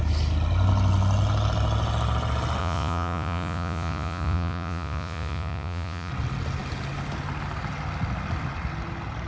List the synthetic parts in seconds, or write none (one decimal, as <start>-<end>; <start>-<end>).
2.6-6.1